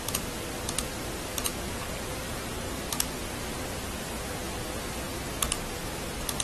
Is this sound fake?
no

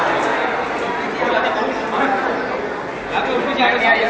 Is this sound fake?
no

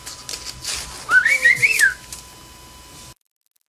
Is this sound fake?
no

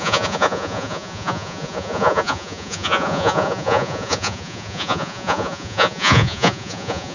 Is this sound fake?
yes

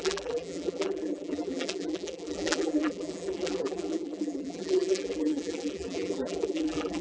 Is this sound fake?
yes